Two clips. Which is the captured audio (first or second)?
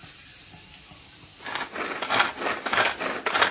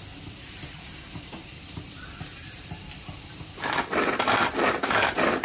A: first